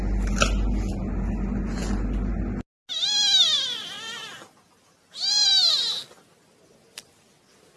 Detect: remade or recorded recorded